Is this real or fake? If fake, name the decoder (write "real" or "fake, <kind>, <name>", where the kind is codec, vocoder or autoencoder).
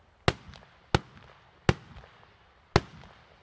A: real